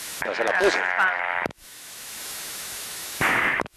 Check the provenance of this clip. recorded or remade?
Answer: remade